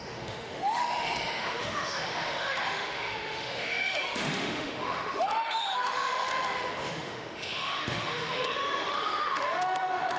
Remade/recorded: remade